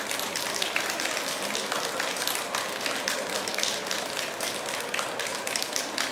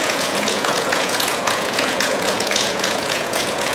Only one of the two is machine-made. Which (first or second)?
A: second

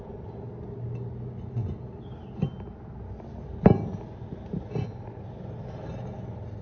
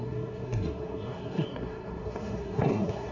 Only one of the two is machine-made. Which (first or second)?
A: second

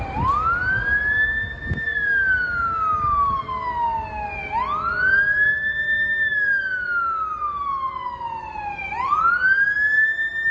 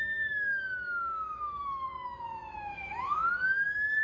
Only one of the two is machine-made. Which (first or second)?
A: second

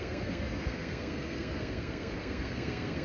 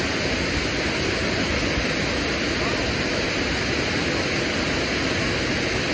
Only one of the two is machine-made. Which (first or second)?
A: first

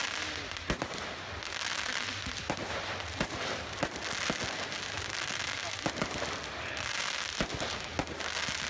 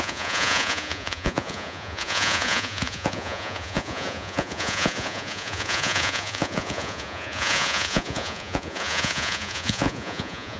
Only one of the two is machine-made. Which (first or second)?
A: second